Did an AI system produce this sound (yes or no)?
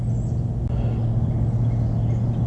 no